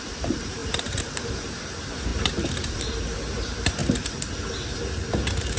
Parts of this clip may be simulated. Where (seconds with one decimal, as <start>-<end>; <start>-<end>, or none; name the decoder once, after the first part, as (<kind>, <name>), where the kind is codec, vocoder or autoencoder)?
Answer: 0.0-3.8 (vocoder, BigVGAN v2); 4.7-5.6